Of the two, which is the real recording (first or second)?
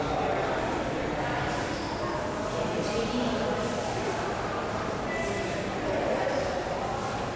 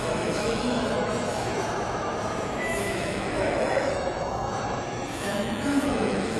first